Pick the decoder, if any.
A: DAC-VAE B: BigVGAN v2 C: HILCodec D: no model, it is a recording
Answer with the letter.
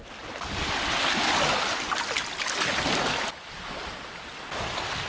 D